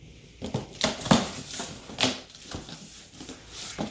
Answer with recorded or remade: recorded